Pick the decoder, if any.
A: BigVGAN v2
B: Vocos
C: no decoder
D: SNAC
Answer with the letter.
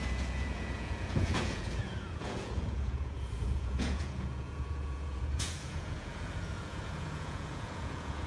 B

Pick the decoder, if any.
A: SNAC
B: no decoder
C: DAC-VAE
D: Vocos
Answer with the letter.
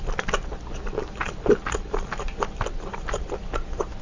B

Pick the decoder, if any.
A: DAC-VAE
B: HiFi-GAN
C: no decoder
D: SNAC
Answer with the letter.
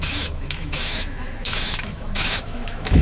A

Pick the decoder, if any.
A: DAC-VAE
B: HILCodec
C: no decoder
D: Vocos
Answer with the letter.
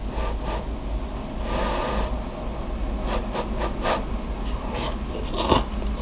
C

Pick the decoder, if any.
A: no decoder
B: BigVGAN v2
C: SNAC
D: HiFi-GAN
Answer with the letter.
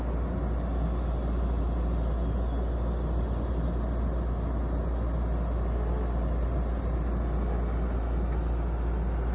A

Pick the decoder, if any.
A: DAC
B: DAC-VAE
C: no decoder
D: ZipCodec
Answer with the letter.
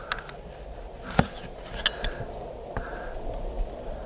C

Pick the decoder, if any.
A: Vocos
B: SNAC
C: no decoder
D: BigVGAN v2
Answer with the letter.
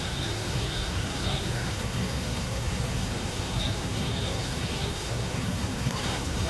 B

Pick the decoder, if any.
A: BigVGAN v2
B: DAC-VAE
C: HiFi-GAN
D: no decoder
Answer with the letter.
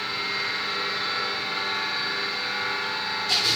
D